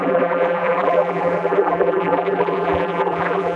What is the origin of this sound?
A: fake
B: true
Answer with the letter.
A